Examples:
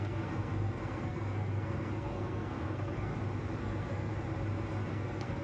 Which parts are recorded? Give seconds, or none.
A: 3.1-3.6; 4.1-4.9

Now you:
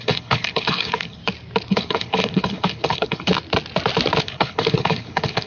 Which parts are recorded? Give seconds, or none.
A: 1.2-1.7; 3.3-4.2

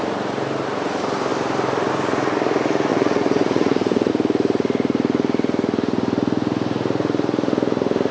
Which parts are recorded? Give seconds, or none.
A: 0.0-2.9; 4.1-8.1

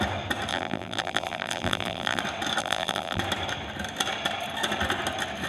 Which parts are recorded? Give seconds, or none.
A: 0.0-0.5; 2.2-2.6; 3.2-5.5